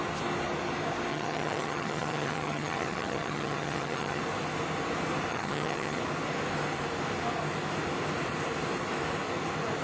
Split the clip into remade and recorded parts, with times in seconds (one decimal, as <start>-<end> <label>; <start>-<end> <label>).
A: 0.0-1.1 recorded; 1.1-4.2 remade; 4.2-5.3 recorded; 5.3-6.0 remade; 6.0-9.8 recorded

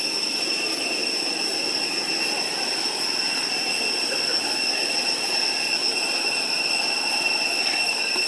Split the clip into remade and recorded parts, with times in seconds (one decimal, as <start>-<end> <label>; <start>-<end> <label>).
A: 0.0-8.3 recorded

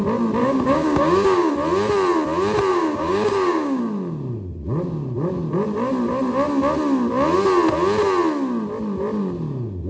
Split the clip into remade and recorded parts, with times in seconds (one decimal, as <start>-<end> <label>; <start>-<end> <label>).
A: 0.0-0.4 recorded; 0.4-1.5 remade; 1.5-2.7 recorded; 2.7-3.8 remade; 3.8-9.9 recorded

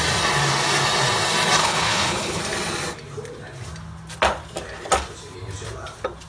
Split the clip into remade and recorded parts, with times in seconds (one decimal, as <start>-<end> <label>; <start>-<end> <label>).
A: 0.0-1.6 recorded; 1.6-2.4 remade; 2.4-6.3 recorded

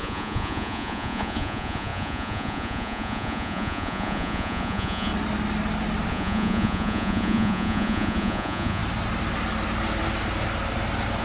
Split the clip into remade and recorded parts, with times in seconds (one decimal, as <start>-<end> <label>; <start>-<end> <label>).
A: 0.0-5.1 remade; 5.1-6.1 recorded; 6.1-8.8 remade; 8.8-11.2 recorded

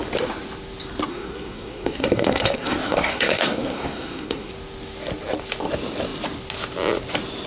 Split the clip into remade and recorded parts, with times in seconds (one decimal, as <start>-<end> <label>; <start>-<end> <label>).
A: 0.0-1.1 recorded; 1.1-4.5 remade; 4.5-7.5 recorded

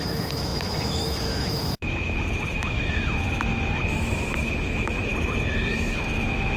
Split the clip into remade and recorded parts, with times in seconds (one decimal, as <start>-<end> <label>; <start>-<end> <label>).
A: 0.0-5.1 remade; 5.1-5.7 recorded; 5.7-6.6 remade

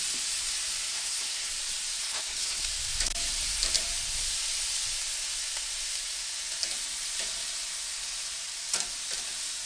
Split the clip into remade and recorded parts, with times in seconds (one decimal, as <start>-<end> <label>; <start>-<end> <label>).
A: 0.0-0.9 recorded; 0.9-1.5 remade; 1.5-2.0 recorded; 2.0-2.6 remade; 2.6-9.7 recorded